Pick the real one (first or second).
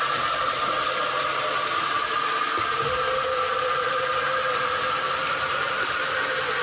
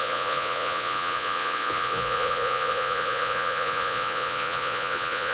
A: first